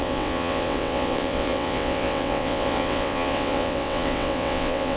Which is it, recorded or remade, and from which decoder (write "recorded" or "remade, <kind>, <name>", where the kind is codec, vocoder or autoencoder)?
remade, vocoder, WaveNeXt